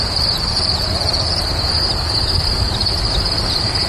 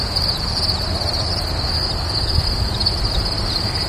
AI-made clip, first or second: first